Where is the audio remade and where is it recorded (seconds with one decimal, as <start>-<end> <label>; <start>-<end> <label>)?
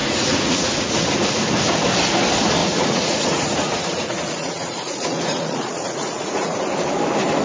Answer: 0.0-1.0 remade; 1.0-2.6 recorded; 2.6-6.6 remade; 6.6-7.4 recorded